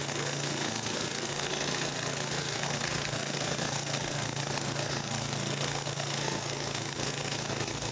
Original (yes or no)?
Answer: no